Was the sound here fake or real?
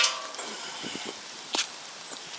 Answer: fake